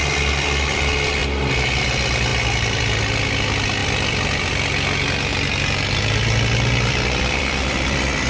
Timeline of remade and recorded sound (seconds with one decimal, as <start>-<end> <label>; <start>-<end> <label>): 0.0-2.3 recorded; 2.3-2.8 remade; 2.8-3.8 recorded; 3.8-4.5 remade; 4.5-5.3 recorded; 5.3-8.3 remade